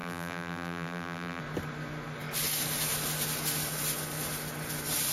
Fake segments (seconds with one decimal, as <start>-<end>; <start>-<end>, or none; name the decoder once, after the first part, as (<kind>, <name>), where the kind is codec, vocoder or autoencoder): 0.0-1.4 (vocoder, BigVGAN v2)